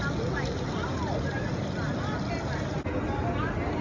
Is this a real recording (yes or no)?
yes